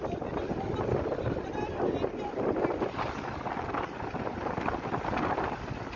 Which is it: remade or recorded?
recorded